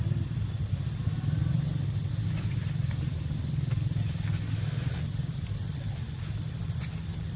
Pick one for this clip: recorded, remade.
recorded